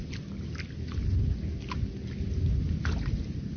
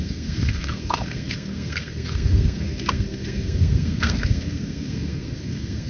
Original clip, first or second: first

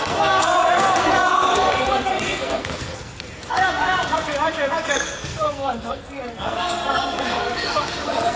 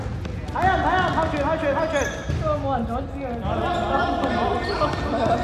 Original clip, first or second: second